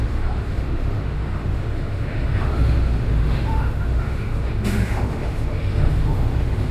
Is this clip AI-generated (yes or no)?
yes